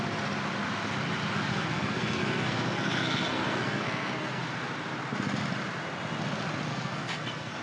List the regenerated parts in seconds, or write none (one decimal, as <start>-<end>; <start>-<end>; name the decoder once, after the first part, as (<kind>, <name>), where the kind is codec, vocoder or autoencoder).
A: 1.5-4.4 (codec, SNAC); 6.7-7.6